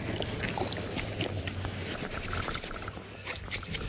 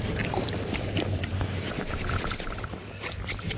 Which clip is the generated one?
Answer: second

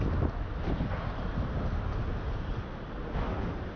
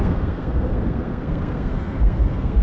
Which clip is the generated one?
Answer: second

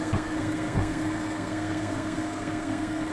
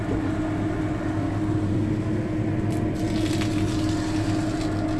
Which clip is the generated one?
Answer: first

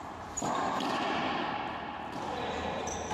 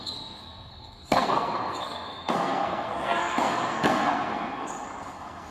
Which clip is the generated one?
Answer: second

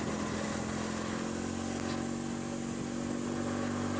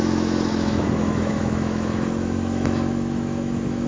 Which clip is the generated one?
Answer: second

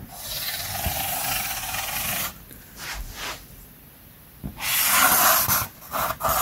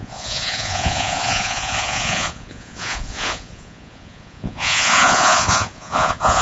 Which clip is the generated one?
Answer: second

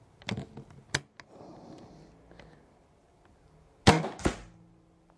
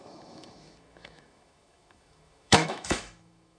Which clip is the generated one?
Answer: second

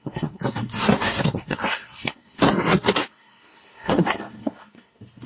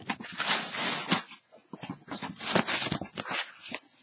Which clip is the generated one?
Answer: first